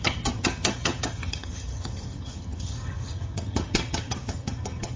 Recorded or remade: remade